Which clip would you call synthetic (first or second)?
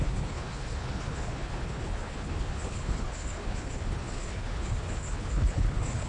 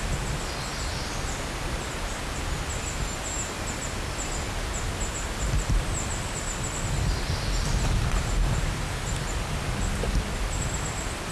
first